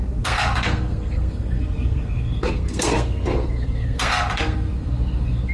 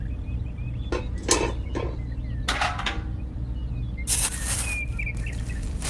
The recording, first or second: second